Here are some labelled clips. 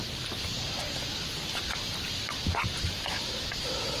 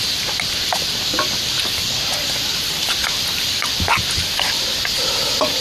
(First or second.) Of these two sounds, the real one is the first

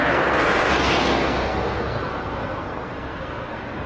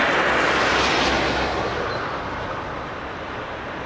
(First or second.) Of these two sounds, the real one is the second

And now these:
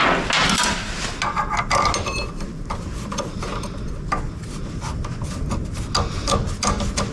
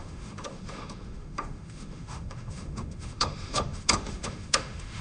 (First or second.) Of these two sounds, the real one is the first